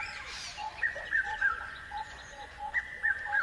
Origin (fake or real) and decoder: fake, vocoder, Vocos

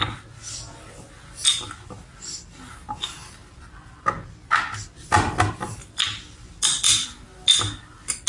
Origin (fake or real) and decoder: real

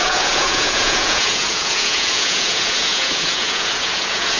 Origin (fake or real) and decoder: fake, vocoder, Vocos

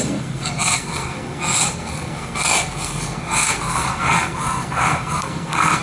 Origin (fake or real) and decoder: fake, codec, SNAC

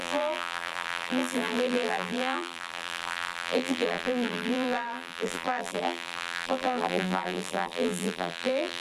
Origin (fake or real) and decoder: fake, vocoder, BigVGAN v2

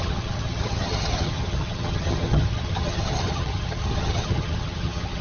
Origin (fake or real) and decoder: fake, vocoder, HiFi-GAN